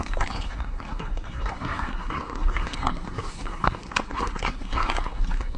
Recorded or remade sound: remade